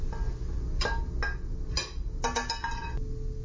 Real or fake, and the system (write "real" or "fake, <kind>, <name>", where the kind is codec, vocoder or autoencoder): real